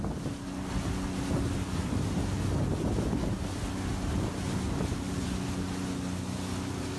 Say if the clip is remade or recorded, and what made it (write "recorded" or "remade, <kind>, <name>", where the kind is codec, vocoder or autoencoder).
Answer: recorded